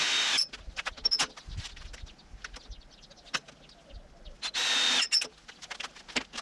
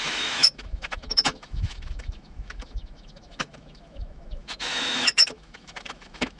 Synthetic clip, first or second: second